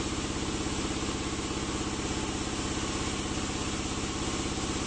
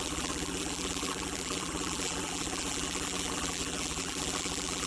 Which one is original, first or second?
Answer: first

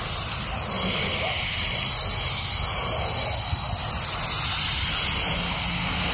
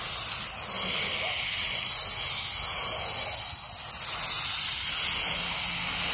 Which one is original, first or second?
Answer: second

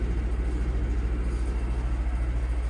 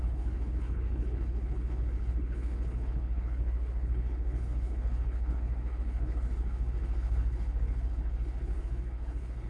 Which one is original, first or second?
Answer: first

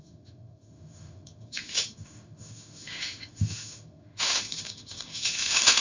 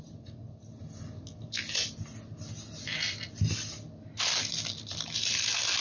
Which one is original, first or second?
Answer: second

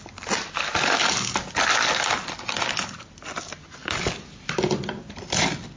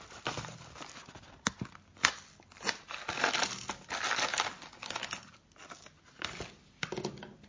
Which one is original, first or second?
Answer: second